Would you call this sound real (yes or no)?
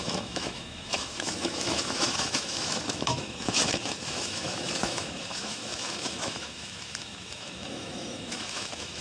no